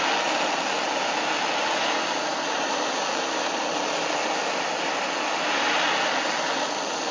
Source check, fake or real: real